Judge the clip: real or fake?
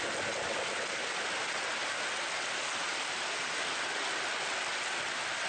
real